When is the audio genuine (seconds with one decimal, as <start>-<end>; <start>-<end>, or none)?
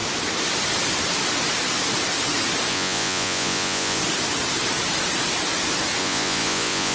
0.0-2.7; 4.0-6.0